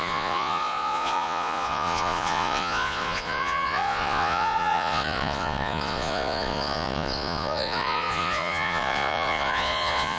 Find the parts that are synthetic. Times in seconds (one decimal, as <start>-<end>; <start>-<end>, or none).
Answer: 0.0-10.2